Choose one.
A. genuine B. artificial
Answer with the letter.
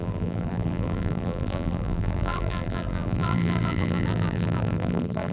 B